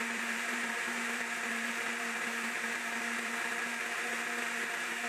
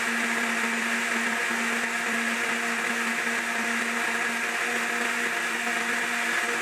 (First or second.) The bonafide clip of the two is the second